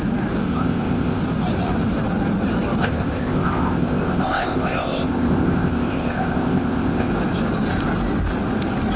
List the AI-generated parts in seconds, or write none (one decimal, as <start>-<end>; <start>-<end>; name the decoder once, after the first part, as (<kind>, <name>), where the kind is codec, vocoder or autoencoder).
0.4-1.2 (codec, ZipCodec); 2.8-7.1